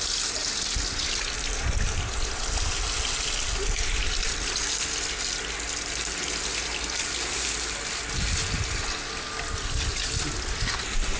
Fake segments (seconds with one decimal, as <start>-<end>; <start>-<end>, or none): none